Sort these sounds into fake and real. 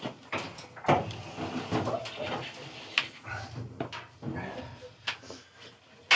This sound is real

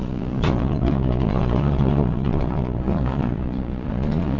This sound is fake